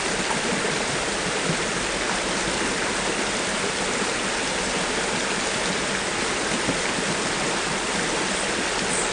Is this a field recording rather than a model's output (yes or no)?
yes